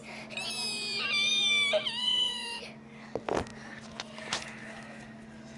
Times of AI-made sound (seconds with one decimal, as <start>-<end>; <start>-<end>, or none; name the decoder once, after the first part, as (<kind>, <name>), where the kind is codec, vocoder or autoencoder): 2.0-2.6 (autoencoder, DAC-VAE)